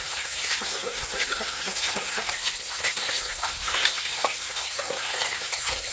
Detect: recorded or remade remade